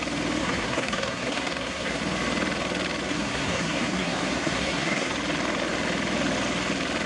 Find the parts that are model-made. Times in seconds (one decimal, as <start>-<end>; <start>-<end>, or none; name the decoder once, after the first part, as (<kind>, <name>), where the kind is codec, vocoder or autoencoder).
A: 0.4-2.0 (codec, SNAC); 3.1-5.1